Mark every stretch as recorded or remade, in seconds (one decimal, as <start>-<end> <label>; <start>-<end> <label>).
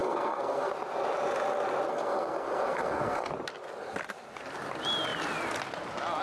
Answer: 0.0-0.7 remade; 0.7-1.9 recorded; 1.9-3.3 remade; 3.3-6.2 recorded